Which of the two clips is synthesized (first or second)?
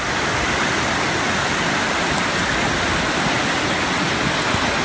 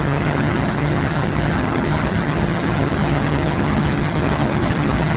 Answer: second